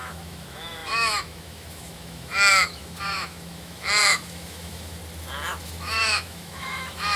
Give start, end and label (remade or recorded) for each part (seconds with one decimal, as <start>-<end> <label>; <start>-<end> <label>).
0.0-5.0 remade; 5.0-5.6 recorded; 5.6-7.2 remade

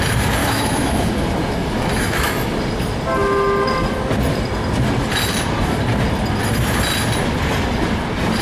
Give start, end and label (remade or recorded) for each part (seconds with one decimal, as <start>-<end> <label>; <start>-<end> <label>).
0.0-0.4 recorded; 0.4-1.1 remade; 1.1-1.6 recorded; 1.6-2.5 remade; 2.5-8.4 recorded

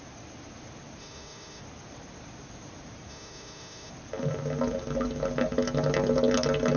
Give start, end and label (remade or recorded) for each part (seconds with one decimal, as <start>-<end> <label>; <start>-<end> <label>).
0.0-1.0 recorded; 1.0-1.6 remade; 1.6-3.1 recorded; 3.1-3.9 remade; 3.9-6.8 recorded

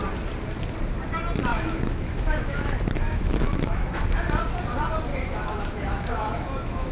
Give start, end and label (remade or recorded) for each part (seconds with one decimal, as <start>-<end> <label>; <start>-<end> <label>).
0.0-1.5 recorded; 1.5-4.0 remade; 4.0-5.1 recorded; 5.1-6.9 remade